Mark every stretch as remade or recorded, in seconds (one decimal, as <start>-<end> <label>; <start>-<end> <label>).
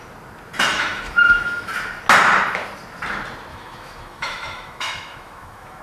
0.0-0.7 recorded; 0.7-1.7 remade; 1.7-3.5 recorded; 3.5-5.8 remade